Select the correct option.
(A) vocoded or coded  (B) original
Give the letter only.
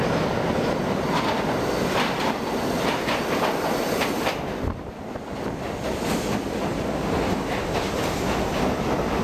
B